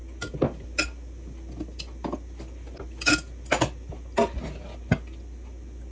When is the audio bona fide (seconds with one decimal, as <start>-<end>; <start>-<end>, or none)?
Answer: 0.0-5.9

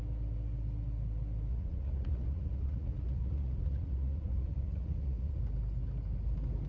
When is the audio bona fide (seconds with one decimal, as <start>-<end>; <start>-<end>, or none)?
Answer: 0.0-1.5; 5.4-6.7

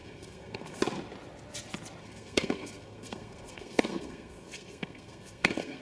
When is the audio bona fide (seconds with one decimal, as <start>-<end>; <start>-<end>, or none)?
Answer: 0.8-2.0

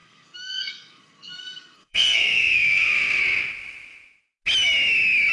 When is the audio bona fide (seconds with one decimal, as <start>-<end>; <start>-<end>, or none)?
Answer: 3.2-5.3